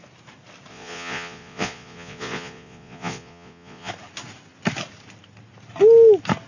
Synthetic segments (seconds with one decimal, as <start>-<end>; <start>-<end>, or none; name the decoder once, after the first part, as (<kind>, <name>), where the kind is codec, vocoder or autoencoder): 0.7-3.9 (vocoder, Vocos)